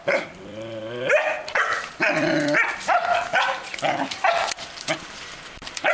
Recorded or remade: remade